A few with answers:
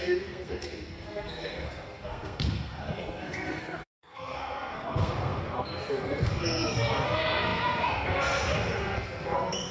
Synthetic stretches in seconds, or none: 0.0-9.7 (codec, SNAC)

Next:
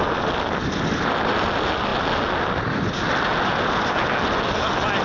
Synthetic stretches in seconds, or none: none

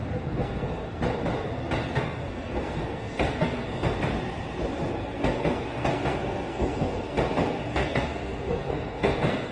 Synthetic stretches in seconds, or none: 0.0-1.0 (codec, SNAC); 1.8-4.0; 5.0-9.5

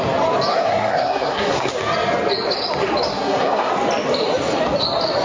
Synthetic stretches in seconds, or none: 0.5-1.7 (codec, SNAC); 3.1-3.7

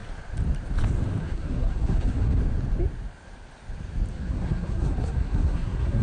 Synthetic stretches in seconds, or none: 1.2-2.4 (codec, SNAC); 4.1-6.0